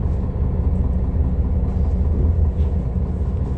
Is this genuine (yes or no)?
yes